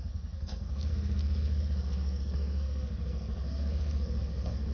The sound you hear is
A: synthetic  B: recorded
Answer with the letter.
A